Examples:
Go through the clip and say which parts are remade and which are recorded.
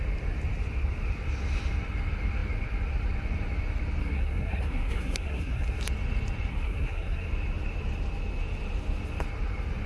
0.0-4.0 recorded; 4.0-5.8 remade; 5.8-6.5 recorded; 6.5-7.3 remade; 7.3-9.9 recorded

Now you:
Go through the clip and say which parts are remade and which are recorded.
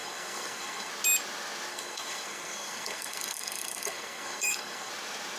0.0-0.9 remade; 0.9-1.7 recorded; 1.7-4.9 remade; 4.9-5.4 recorded